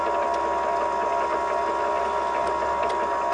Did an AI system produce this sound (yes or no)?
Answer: no